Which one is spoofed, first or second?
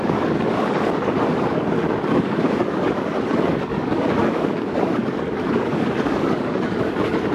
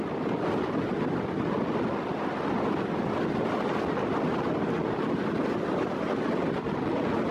first